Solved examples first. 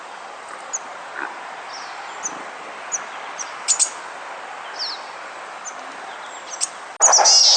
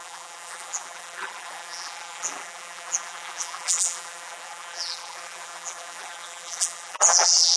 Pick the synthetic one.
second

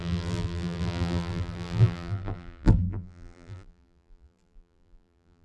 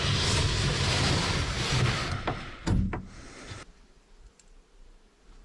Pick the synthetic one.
first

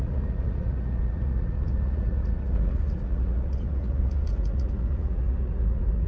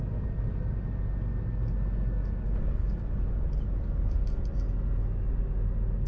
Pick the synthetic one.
first